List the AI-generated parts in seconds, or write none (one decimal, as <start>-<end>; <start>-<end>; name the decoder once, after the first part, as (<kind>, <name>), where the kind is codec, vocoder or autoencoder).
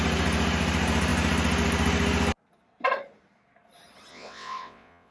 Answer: 4.1-5.1 (vocoder, WaveNeXt)